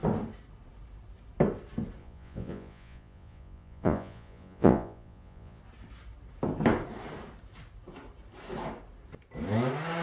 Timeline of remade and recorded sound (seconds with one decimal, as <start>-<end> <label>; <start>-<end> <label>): 0.0-2.0 recorded; 2.0-5.6 remade; 5.6-10.0 recorded